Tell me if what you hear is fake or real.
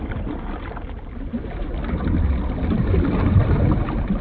real